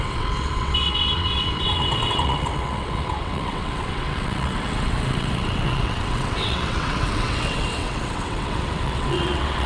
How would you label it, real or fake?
fake